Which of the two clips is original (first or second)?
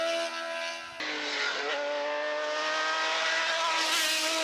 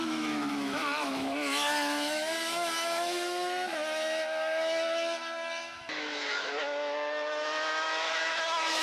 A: first